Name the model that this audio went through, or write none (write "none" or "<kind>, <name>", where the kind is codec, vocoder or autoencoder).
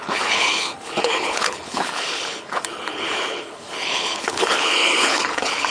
codec, HILCodec